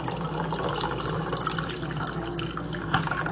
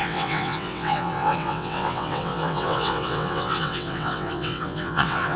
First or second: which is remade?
second